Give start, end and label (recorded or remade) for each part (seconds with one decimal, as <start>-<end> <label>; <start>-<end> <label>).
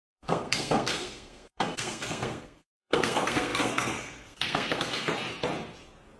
0.0-5.1 remade; 5.1-6.2 recorded